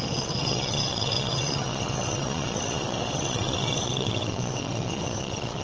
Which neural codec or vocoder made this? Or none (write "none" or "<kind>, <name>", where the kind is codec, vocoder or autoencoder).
vocoder, WaveNeXt